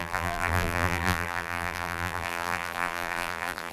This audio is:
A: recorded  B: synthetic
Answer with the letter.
B